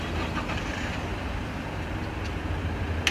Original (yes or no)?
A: yes